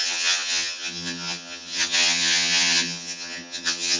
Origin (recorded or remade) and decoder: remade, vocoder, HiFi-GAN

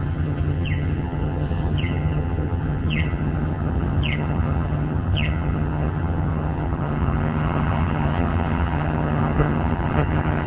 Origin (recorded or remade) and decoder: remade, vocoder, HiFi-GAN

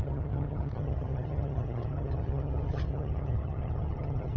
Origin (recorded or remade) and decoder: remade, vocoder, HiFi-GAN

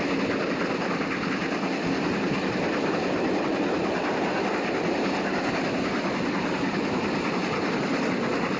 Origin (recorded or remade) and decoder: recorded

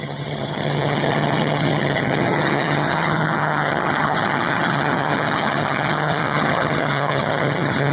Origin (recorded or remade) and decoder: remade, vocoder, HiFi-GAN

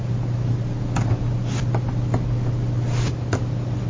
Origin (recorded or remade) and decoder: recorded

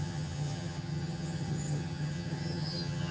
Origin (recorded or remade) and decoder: remade, vocoder, HiFi-GAN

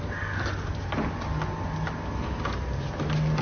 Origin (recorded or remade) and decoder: recorded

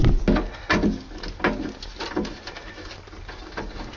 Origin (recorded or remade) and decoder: recorded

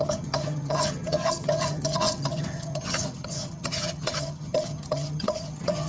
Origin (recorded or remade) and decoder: remade, vocoder, HiFi-GAN